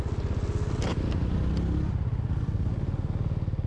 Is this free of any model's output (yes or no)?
yes